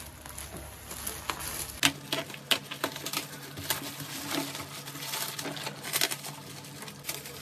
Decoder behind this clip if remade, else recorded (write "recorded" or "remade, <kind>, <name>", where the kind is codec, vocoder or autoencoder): recorded